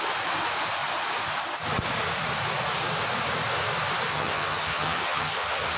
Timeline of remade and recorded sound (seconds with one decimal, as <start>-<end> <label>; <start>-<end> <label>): 0.0-4.1 recorded; 4.1-5.8 remade